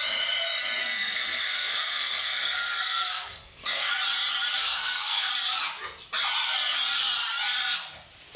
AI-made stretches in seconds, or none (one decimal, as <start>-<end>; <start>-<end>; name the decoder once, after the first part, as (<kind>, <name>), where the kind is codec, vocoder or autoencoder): 0.8-3.9 (codec, SNAC); 4.6-5.3